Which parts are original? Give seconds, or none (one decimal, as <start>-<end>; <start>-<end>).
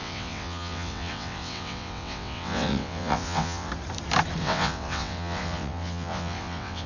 3.7-4.4